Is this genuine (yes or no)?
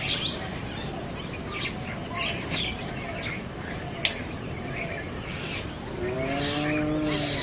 yes